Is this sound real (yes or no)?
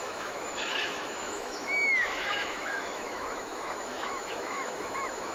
no